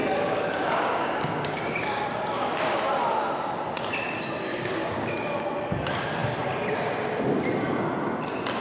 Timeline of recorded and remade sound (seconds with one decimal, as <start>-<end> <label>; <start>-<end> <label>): 0.0-2.8 remade; 2.8-4.5 recorded; 4.5-5.4 remade; 5.4-8.6 recorded